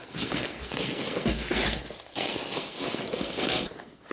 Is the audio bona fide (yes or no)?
no